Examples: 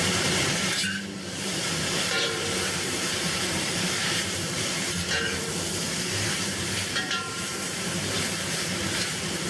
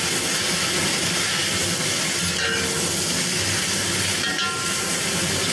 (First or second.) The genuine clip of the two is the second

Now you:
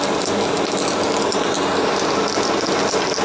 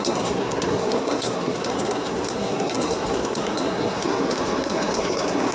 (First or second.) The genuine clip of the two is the first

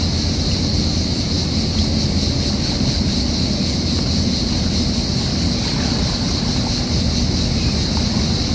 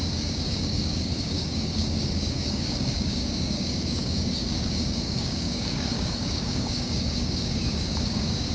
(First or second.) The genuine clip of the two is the first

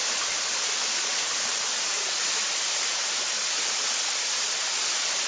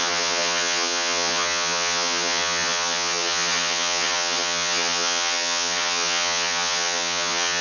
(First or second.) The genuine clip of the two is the first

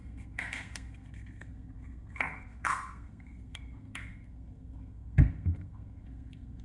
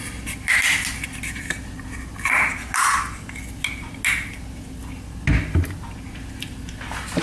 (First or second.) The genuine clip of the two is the second